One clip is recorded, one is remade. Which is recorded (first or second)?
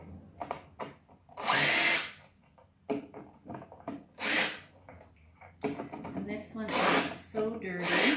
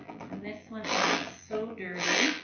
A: first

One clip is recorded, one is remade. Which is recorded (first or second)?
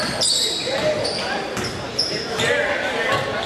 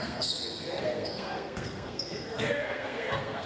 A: first